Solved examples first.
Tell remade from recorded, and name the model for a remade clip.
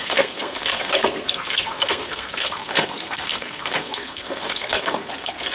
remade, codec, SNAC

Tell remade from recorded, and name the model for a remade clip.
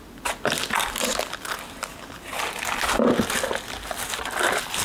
recorded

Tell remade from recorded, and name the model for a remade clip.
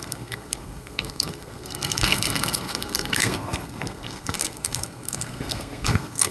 remade, codec, SNAC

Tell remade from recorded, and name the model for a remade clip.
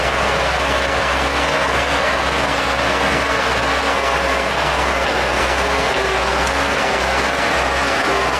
remade, codec, SNAC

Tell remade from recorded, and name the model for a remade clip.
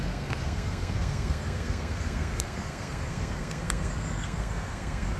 remade, codec, SNAC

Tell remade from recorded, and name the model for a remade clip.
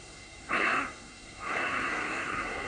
remade, codec, SNAC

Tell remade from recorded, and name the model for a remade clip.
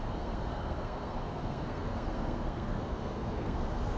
remade, codec, SNAC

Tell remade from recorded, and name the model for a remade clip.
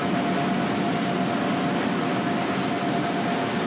recorded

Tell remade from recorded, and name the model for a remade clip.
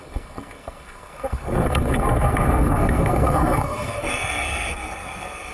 remade, codec, SNAC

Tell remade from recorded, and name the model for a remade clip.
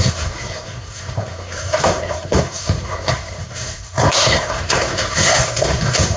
remade, codec, SNAC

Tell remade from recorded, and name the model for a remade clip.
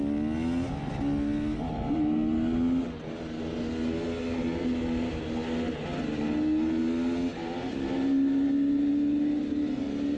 recorded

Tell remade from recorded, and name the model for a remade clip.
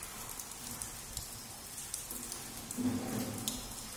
recorded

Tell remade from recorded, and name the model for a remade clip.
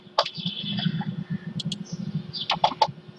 recorded